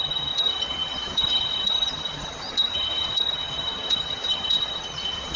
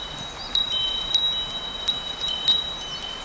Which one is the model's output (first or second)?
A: first